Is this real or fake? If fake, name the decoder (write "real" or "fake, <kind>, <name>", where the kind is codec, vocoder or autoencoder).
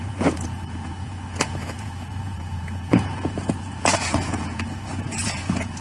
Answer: fake, vocoder, Vocos